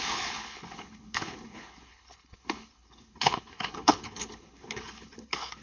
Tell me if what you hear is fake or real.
fake